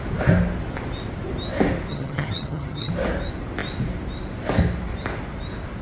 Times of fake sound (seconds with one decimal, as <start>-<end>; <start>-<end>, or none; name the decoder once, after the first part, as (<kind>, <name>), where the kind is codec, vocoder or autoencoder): 1.9-2.9 (vocoder, HiFi-GAN)

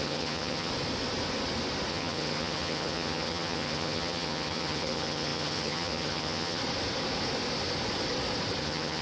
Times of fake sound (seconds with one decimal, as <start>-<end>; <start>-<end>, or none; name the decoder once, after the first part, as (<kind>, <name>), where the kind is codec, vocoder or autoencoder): 0.0-0.7 (vocoder, HiFi-GAN); 1.9-6.6; 8.6-9.0

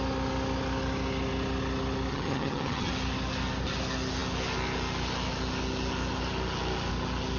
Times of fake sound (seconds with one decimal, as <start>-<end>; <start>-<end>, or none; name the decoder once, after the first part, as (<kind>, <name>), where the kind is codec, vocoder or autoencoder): 2.1-2.9 (vocoder, HiFi-GAN)

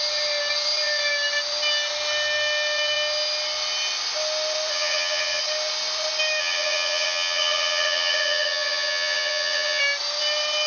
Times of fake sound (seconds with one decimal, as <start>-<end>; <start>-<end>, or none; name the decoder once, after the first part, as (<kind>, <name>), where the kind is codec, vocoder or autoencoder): 4.7-5.4 (vocoder, HiFi-GAN); 6.4-9.8

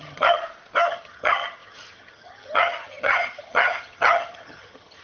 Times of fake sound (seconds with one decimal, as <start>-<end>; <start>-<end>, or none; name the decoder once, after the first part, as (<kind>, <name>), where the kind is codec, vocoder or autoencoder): 0.0-0.4 (vocoder, HiFi-GAN); 0.9-5.0

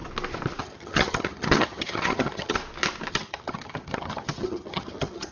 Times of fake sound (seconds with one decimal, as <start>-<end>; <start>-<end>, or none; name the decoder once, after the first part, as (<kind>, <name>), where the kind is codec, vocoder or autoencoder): 0.6-2.6 (vocoder, HiFi-GAN); 3.1-5.3

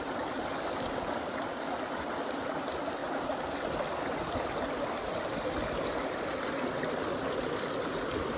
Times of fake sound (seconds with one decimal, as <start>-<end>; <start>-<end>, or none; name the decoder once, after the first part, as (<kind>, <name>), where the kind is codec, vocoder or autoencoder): none

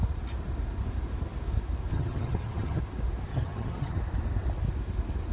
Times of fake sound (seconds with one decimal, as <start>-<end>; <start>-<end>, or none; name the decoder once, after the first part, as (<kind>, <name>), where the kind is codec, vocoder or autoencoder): 1.9-2.8 (vocoder, HiFi-GAN); 3.3-4.0